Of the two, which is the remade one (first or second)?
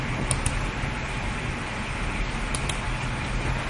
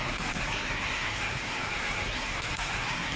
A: second